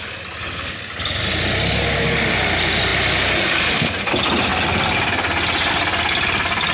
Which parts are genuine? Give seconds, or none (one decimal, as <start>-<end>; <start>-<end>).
0.0-6.7